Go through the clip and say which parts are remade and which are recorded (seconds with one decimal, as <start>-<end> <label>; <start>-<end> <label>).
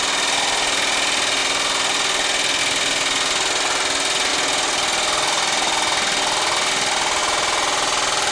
0.0-8.3 recorded